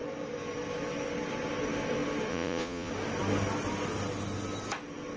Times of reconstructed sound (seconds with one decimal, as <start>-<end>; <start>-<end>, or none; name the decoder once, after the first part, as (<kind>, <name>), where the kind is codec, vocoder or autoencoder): 2.3-2.9 (vocoder, Vocos)